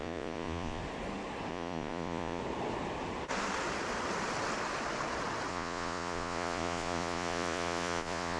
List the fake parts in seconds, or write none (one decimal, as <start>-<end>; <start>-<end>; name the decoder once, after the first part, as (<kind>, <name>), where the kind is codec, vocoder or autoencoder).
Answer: 0.0-0.8 (vocoder, Vocos); 1.5-2.4; 5.5-8.4

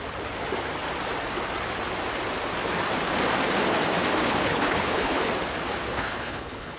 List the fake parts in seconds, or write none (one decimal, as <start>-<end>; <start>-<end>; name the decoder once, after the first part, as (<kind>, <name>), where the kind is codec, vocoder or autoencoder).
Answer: 4.2-5.3 (codec, HILCodec); 5.9-6.8